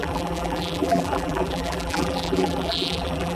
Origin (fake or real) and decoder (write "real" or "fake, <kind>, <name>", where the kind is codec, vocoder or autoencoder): fake, vocoder, BigVGAN v2